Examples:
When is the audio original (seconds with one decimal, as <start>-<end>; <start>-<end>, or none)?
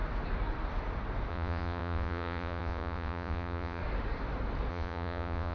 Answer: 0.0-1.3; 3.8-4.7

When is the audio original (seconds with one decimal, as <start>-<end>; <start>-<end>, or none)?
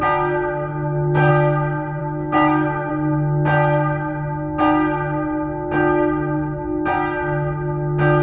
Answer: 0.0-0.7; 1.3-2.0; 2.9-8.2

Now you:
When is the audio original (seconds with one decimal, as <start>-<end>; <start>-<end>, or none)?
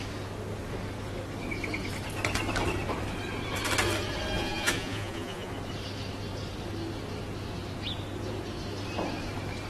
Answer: 0.0-4.4; 5.5-9.7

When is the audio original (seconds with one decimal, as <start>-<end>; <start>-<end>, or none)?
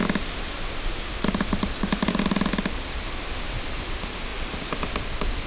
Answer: 0.0-5.5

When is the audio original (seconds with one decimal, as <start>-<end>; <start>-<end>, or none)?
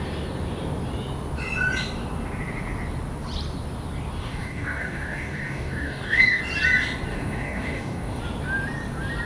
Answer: 0.0-4.2; 6.4-7.1; 8.2-9.3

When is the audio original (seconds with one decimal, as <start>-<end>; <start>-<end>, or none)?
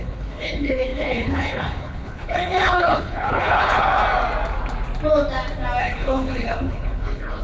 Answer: 4.0-5.8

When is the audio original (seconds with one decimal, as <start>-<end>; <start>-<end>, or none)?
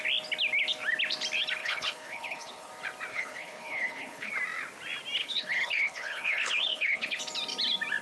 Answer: 0.0-1.6; 2.7-3.1; 4.3-5.2; 7.2-8.0